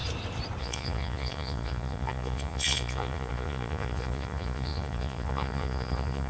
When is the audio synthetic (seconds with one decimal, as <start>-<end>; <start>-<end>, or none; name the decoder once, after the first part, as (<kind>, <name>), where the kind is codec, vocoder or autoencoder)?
0.6-6.3 (vocoder, Vocos)